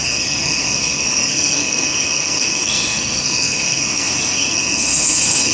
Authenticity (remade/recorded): remade